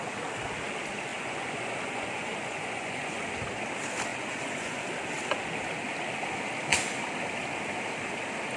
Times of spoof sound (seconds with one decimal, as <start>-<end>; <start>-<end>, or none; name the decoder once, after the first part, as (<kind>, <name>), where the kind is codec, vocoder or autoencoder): 1.1-3.2 (vocoder, Vocos); 4.1-4.8